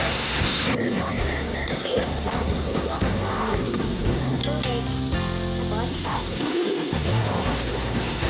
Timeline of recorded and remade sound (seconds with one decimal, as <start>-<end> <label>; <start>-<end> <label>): 0.0-4.4 remade; 4.4-5.9 recorded; 5.9-8.3 remade